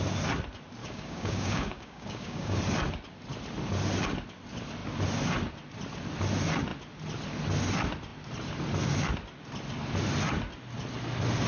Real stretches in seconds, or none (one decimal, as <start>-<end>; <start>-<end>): 0.0-0.8; 2.6-11.5